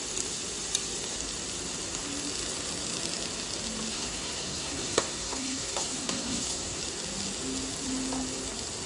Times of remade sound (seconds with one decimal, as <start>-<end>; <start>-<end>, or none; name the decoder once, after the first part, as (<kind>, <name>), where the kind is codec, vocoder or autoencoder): 3.9-6.8 (codec, SNAC)